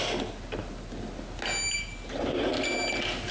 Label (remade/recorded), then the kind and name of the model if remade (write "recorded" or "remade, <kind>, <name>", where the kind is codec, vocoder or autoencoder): recorded